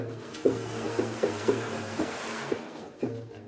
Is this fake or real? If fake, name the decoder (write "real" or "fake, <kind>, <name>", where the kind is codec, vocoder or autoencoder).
fake, codec, SNAC